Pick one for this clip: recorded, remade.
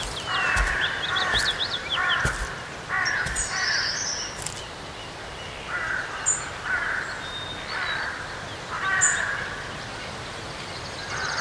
recorded